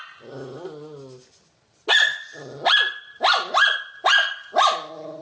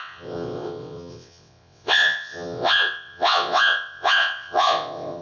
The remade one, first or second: second